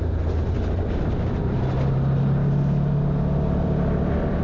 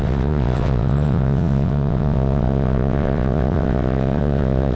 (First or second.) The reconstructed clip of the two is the second